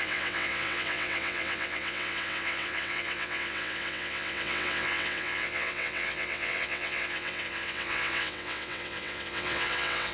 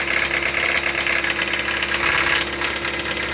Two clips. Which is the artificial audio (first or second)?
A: first